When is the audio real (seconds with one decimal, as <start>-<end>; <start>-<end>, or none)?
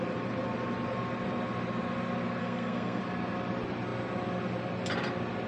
0.0-2.4; 3.0-5.5